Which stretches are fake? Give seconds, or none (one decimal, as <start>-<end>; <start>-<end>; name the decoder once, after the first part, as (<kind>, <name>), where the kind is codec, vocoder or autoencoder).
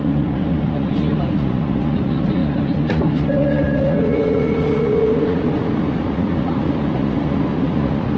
0.0-8.2 (vocoder, Vocos)